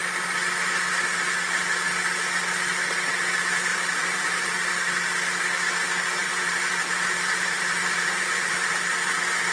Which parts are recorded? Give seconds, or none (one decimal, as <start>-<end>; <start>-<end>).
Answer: 0.0-3.7; 4.7-6.2; 8.7-9.5